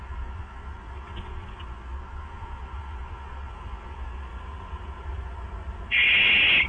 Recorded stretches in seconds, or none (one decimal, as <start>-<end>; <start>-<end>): 4.3-6.7